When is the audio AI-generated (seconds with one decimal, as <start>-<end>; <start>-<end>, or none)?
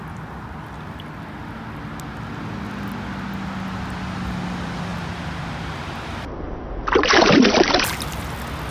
none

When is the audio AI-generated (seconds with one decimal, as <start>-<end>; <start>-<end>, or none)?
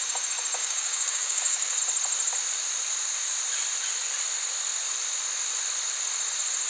0.6-1.8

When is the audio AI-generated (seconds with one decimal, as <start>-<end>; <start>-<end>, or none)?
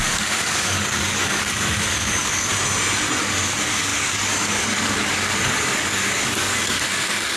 0.0-2.5; 3.2-7.4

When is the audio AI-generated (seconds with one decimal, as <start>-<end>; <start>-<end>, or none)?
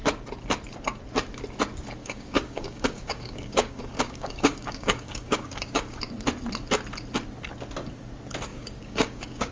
2.0-6.0; 8.5-9.5